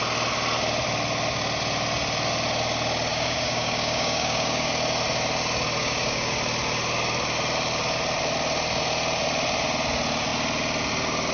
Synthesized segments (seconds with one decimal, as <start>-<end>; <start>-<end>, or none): 3.1-4.7; 5.8-6.3